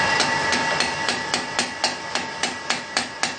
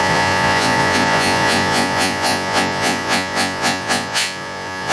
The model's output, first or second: second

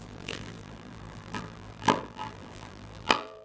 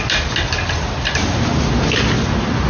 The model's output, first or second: first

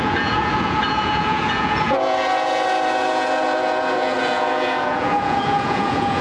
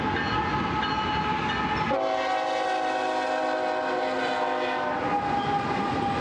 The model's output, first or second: first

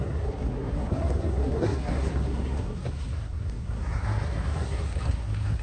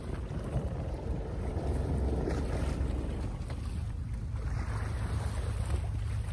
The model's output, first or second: first